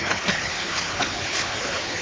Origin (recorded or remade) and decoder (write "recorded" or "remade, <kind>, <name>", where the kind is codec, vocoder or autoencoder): remade, codec, HILCodec